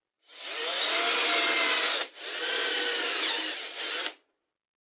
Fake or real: real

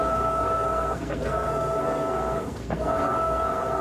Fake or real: fake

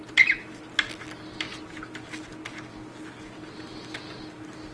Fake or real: real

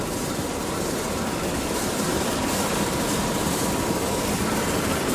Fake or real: fake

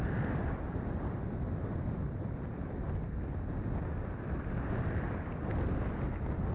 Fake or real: real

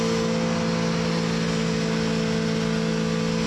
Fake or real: real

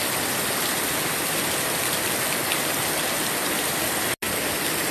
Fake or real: real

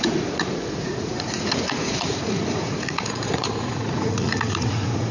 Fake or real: fake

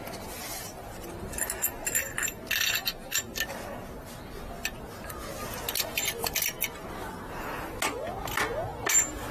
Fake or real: real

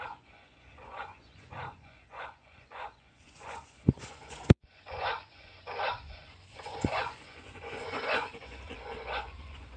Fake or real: fake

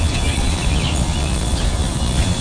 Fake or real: fake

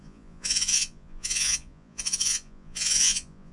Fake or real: fake